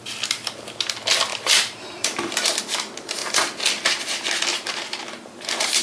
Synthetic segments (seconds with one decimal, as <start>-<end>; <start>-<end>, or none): 1.3-2.6; 4.5-5.0